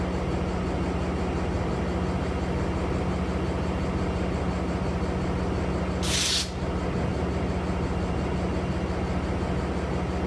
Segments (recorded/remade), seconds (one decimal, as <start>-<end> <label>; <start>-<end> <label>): 0.0-10.3 recorded